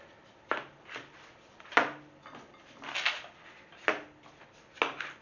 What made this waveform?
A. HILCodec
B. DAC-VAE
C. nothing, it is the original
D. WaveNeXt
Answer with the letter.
C